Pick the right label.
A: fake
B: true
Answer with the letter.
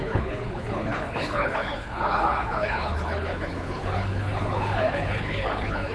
A